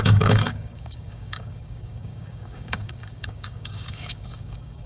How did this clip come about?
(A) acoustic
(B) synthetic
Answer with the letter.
B